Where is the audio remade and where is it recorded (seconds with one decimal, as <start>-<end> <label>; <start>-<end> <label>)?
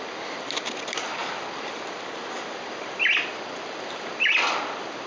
0.0-5.1 recorded